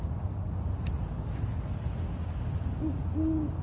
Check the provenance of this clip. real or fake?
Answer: real